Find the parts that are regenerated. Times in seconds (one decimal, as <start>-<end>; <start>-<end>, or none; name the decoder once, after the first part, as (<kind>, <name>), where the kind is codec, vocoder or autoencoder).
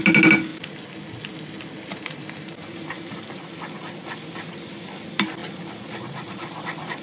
1.9-3.4 (vocoder, BigVGAN v2)